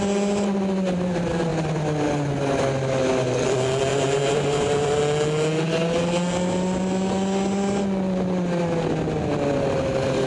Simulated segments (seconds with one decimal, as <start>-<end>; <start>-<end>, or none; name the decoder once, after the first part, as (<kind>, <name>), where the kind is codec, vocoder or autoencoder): 3.9-5.0 (vocoder, BigVGAN v2)